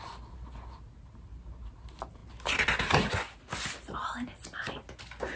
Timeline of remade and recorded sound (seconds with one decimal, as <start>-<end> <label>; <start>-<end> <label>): 0.0-5.4 recorded